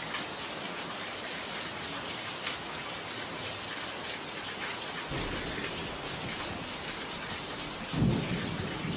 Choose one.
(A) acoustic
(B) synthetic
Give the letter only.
A